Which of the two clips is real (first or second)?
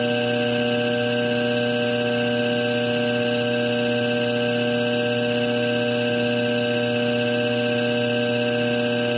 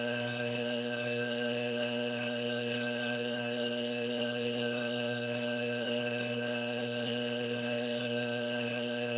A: first